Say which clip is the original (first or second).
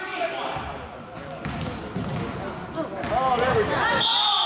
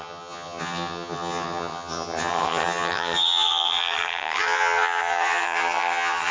first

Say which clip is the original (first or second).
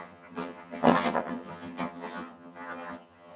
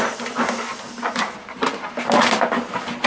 second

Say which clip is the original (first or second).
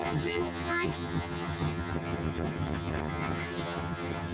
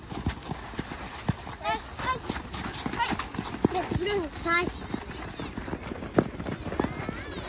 second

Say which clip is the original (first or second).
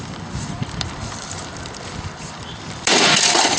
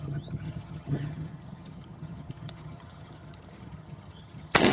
first